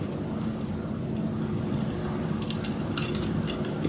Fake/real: real